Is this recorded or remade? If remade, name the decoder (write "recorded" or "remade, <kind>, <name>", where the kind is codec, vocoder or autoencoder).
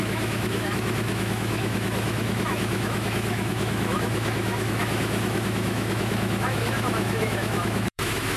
remade, autoencoder, DAC-VAE